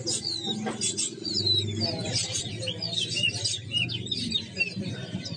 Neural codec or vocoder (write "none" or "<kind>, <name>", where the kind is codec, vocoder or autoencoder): none